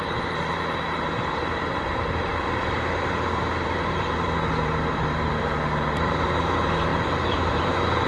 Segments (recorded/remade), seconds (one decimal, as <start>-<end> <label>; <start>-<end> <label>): 0.0-8.1 remade